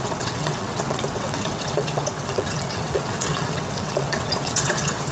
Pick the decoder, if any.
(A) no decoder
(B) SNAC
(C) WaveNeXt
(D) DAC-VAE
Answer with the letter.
C